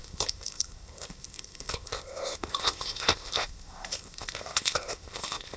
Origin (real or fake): fake